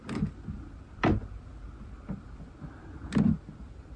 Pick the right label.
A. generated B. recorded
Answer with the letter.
B